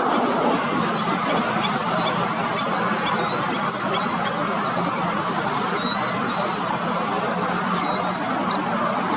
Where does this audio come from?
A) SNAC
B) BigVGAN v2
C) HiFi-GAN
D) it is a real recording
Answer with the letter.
D